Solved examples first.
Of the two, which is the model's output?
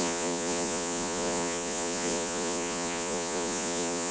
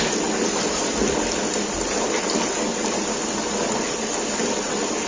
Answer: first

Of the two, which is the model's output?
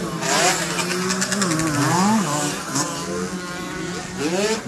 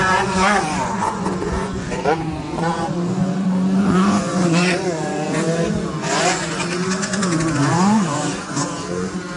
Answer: second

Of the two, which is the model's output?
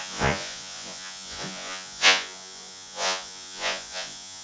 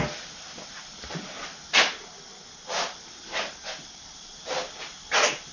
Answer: first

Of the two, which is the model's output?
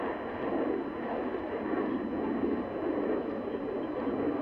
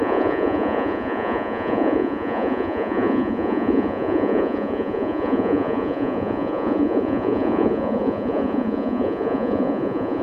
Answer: second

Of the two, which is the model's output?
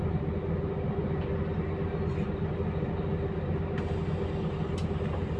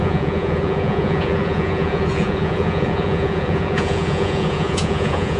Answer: second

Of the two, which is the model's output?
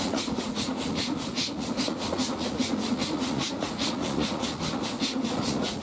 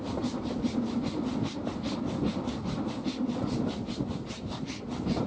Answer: first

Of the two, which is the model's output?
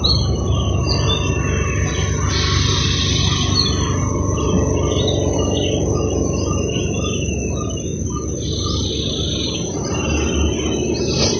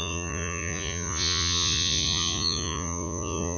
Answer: second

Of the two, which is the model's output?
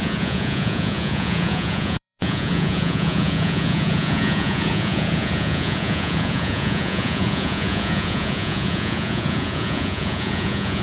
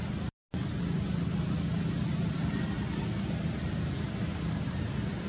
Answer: first